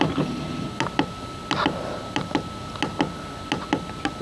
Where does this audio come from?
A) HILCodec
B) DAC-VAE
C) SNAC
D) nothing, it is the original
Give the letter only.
D